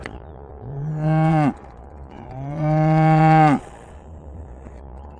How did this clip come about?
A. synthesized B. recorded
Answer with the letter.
A